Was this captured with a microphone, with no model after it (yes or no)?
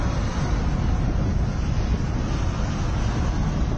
yes